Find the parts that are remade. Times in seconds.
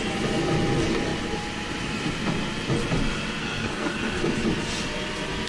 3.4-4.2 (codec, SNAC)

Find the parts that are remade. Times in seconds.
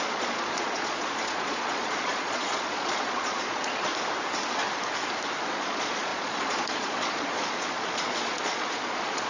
0.0-3.9 (vocoder, Vocos); 5.5-9.3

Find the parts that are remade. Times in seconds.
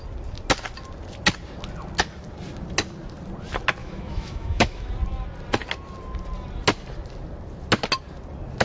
3.8-4.9 (autoencoder, DAC-VAE)